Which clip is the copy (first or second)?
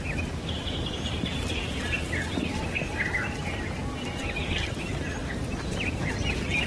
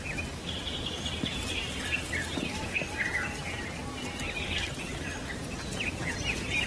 first